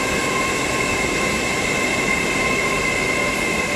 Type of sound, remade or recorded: recorded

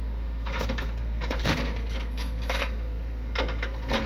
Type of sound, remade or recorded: remade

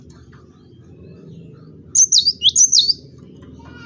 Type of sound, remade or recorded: recorded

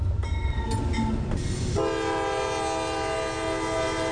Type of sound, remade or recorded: recorded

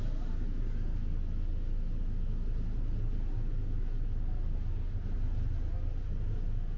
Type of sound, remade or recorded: recorded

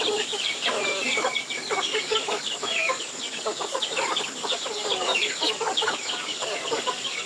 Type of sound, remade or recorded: remade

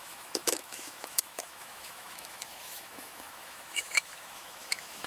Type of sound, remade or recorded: remade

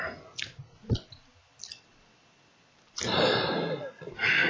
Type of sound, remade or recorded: recorded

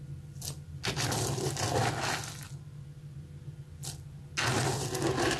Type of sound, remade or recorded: recorded